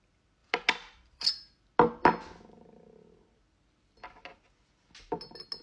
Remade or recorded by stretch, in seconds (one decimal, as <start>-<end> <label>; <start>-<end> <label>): 0.0-5.6 recorded